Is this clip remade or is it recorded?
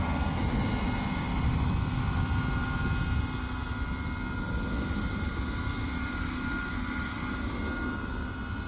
recorded